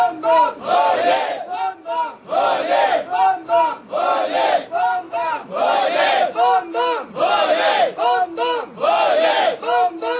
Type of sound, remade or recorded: recorded